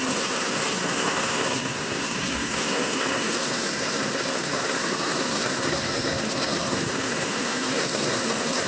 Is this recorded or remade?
remade